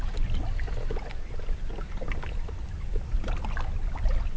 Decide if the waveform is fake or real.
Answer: real